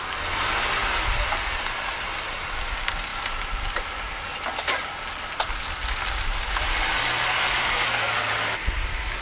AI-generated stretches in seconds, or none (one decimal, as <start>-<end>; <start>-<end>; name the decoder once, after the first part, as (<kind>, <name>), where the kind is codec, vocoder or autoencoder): none